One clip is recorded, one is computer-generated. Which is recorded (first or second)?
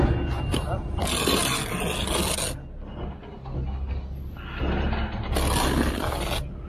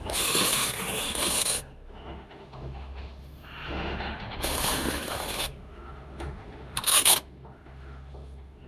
first